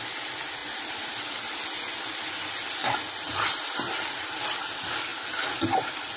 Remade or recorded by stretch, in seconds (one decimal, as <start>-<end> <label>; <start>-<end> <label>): 0.0-6.2 recorded